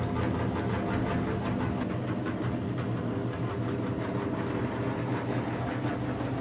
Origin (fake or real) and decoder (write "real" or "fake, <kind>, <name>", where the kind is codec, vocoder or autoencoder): real